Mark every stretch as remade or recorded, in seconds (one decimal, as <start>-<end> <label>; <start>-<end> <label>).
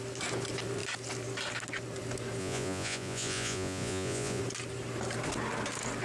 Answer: 0.0-2.4 recorded; 2.4-4.4 remade; 4.4-6.0 recorded